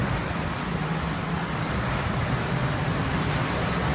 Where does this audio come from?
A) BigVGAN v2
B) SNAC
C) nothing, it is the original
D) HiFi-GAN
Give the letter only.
C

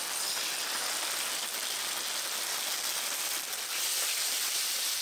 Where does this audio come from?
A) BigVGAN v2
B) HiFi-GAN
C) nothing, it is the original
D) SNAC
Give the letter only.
C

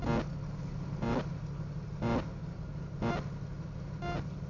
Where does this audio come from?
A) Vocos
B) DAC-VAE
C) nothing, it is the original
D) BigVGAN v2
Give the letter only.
C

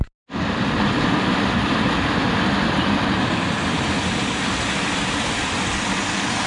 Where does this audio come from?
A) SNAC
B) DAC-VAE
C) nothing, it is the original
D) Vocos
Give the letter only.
C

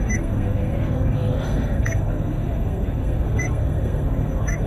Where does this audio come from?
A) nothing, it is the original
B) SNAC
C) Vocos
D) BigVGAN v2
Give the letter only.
B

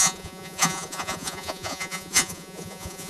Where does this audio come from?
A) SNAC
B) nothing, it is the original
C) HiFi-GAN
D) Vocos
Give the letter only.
D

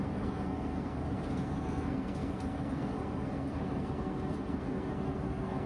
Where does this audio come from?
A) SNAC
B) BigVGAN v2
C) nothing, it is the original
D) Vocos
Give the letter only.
A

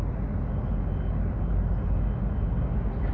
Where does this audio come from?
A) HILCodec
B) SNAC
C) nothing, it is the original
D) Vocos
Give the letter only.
C